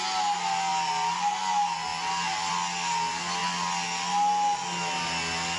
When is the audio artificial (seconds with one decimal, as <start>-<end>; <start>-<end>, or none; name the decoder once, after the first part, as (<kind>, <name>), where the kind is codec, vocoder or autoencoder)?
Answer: none